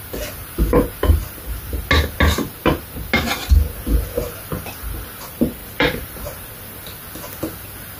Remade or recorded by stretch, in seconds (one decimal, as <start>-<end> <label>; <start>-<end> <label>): 0.0-5.6 recorded; 5.6-6.5 remade; 6.5-8.0 recorded